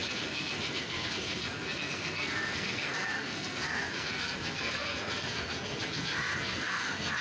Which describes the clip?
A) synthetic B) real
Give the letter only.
A